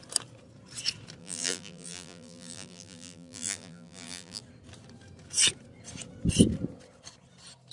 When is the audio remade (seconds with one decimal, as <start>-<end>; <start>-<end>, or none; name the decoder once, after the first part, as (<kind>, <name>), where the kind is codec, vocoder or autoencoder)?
1.2-4.4 (vocoder, BigVGAN v2)